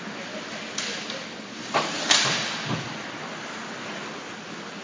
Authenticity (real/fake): real